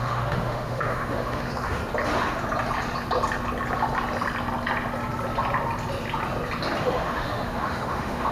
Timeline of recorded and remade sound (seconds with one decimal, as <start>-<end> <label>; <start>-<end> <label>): 0.0-1.8 remade; 1.8-6.8 recorded; 6.8-8.3 remade